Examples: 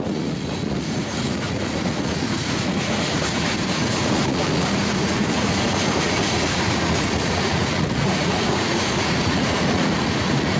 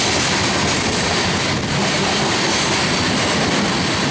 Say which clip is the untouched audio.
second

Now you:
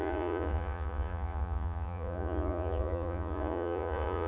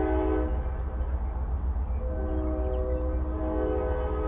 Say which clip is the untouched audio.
second